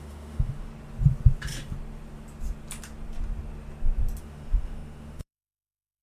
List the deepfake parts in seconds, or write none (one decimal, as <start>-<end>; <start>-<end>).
0.0-0.7; 4.2-6.0

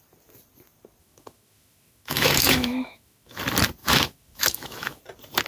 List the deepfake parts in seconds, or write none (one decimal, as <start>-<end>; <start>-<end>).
1.0-3.4; 3.8-5.0

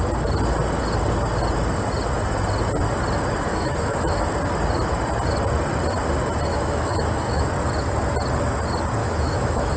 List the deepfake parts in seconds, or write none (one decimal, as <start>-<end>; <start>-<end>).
3.5-4.4; 6.5-7.5; 9.0-9.8

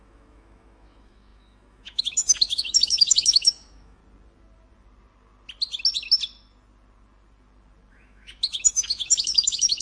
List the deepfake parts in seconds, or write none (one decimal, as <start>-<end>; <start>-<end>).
0.0-4.0; 7.9-9.8

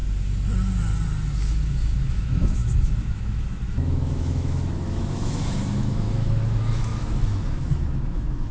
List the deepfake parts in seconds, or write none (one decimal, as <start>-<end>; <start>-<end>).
1.4-8.5

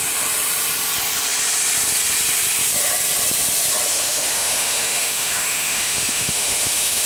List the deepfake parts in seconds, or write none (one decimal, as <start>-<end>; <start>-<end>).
3.9-7.1

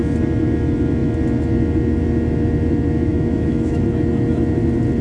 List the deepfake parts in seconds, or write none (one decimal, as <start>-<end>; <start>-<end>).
3.1-3.8

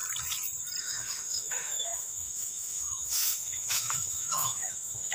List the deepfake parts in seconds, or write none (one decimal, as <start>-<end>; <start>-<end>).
0.8-5.1